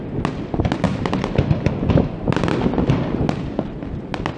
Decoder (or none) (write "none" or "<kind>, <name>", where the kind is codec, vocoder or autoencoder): none